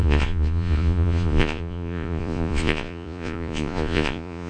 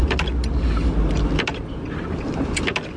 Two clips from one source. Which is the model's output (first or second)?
first